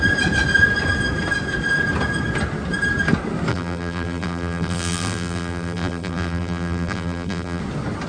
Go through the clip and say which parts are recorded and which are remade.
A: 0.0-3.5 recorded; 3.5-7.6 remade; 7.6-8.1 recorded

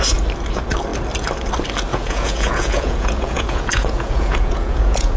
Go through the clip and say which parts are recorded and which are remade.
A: 0.0-1.9 recorded; 1.9-5.2 remade

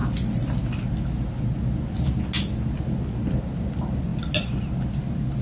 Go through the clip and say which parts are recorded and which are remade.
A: 0.0-5.4 recorded

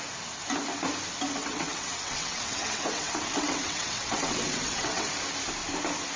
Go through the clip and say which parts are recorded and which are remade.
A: 0.0-1.4 recorded; 1.4-5.1 remade; 5.1-6.2 recorded

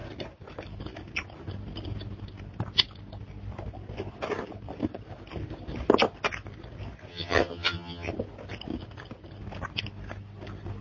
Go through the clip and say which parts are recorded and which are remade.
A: 0.0-7.1 recorded; 7.1-8.1 remade; 8.1-10.8 recorded

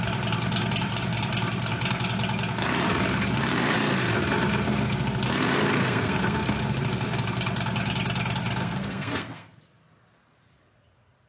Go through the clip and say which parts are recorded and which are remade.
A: 0.0-5.7 recorded; 5.7-6.6 remade; 6.6-8.6 recorded; 8.6-9.6 remade; 9.6-11.3 recorded